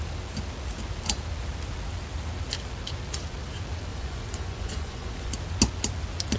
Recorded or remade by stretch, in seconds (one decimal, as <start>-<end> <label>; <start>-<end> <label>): 0.0-3.9 recorded; 3.9-5.3 remade; 5.3-6.4 recorded